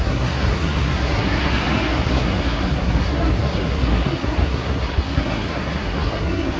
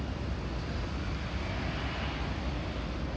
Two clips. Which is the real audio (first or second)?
second